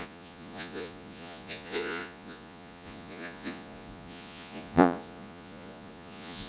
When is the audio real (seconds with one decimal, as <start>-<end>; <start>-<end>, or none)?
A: none